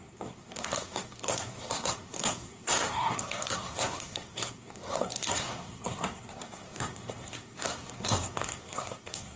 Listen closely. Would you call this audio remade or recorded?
remade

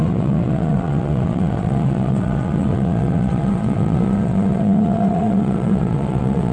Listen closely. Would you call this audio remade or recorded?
remade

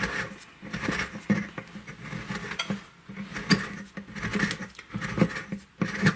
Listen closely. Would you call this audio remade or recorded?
recorded